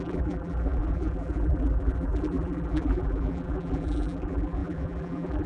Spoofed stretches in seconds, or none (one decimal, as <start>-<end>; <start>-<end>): 0.0-5.5